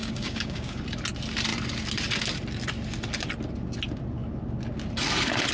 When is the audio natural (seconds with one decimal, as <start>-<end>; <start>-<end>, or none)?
0.8-5.5